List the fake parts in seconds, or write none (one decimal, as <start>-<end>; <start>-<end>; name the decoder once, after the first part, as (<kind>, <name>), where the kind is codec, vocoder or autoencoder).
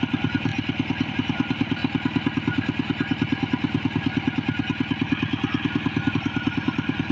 0.0-0.5 (vocoder, BigVGAN v2); 1.1-1.8; 6.1-7.1